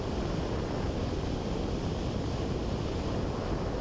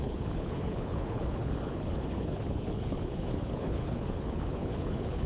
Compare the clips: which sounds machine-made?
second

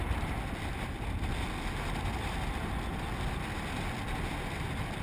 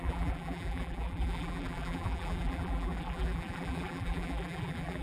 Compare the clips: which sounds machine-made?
second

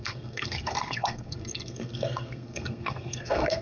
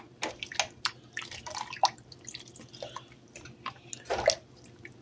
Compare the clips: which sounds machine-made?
first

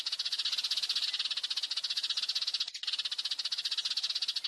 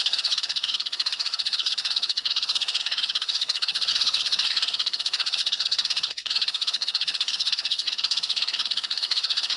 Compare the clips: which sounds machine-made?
second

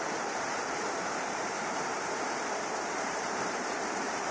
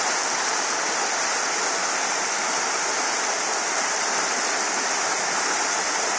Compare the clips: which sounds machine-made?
first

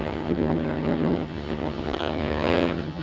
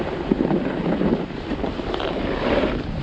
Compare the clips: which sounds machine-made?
first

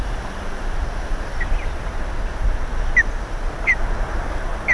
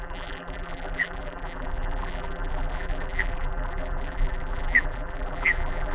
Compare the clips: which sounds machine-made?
second